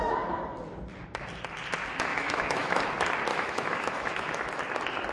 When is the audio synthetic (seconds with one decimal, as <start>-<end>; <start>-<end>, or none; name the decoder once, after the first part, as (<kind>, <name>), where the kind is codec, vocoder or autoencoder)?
2.1-2.8 (autoencoder, DAC-VAE); 3.3-4.6